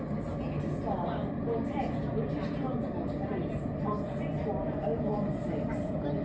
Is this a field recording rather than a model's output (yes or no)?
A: yes